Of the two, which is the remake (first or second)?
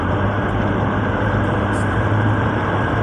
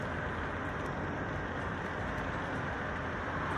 first